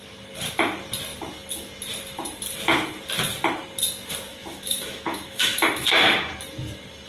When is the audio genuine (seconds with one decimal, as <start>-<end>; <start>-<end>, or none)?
0.0-4.3; 6.3-7.1